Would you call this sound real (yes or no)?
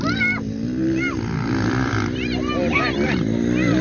yes